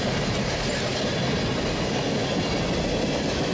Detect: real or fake real